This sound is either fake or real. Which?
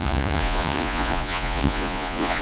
fake